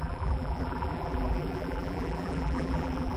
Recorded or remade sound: remade